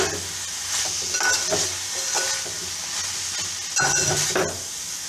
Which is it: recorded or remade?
recorded